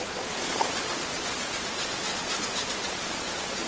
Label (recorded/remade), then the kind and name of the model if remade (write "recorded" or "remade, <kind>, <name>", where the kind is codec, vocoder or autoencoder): remade, vocoder, Vocos